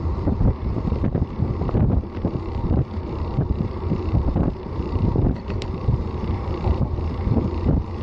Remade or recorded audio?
remade